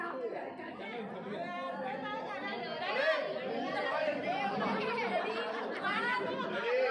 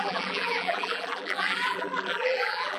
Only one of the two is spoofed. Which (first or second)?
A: second